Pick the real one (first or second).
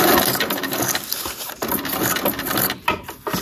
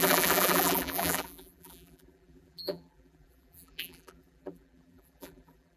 first